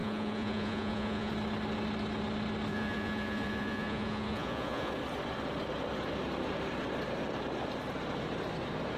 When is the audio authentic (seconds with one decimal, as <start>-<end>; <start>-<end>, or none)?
1.3-2.7; 4.9-9.0